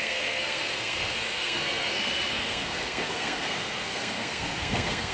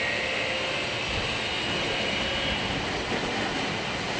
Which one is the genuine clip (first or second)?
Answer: second